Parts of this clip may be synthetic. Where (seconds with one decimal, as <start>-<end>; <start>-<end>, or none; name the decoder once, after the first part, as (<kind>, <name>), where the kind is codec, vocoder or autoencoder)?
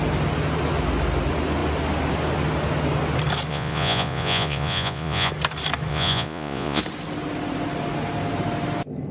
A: 3.5-5.3 (vocoder, Vocos); 5.9-6.8